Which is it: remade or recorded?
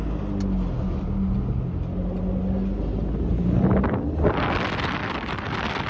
recorded